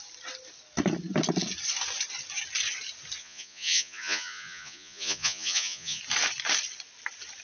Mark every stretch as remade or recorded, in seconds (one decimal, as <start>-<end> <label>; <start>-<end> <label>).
0.0-3.2 recorded; 3.2-6.0 remade; 6.0-7.4 recorded